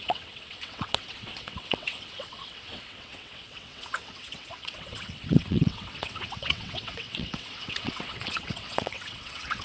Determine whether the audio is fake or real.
fake